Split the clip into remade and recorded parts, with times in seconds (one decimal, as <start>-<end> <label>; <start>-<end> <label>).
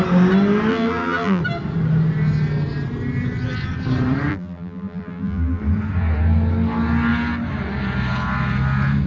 0.0-0.7 recorded; 0.7-1.4 remade; 1.4-4.3 recorded; 4.3-5.6 remade; 5.6-9.1 recorded